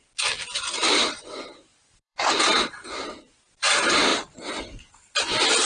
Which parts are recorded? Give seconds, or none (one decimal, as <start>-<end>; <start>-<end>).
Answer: 0.0-1.7; 3.2-4.1; 4.6-5.7